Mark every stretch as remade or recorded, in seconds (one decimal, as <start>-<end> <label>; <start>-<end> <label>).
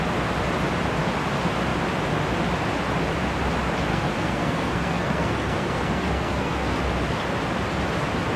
0.0-3.9 recorded; 3.9-6.8 remade; 6.8-8.4 recorded